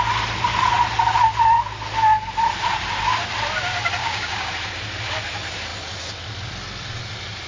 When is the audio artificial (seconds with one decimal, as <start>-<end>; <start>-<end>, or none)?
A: 4.0-4.5